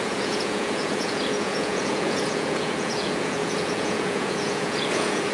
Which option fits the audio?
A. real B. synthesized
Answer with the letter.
B